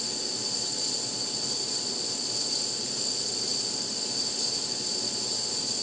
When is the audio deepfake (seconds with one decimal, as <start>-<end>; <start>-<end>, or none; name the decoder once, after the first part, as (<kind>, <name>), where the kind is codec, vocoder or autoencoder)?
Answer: none